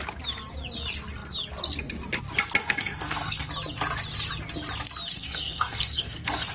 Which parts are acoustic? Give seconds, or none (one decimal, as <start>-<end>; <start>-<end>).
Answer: 0.0-2.6; 3.5-5.1